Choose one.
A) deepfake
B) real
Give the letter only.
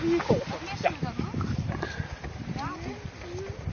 B